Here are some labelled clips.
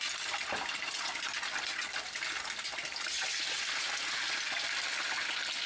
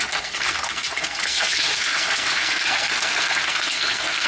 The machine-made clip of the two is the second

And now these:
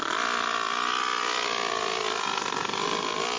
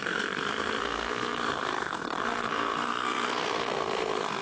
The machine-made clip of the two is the second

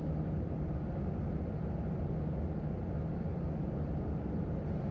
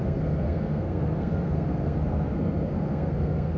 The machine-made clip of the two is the second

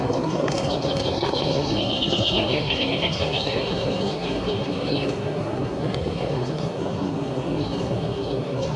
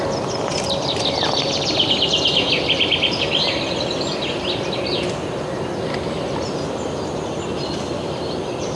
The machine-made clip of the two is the first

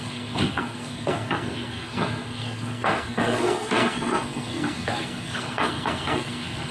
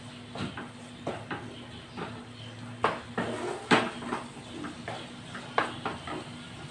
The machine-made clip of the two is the first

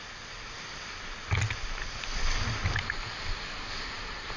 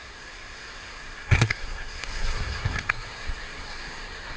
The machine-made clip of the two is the second